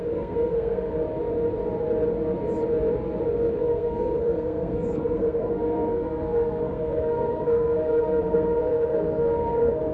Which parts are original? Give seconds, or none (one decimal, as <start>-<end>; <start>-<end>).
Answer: 1.0-3.5